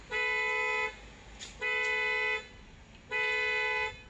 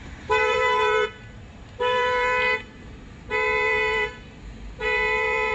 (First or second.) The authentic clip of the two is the first